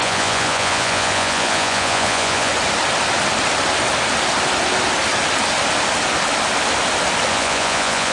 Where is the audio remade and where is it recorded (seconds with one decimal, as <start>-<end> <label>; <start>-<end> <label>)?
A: 0.0-2.5 remade; 2.5-7.3 recorded; 7.3-8.1 remade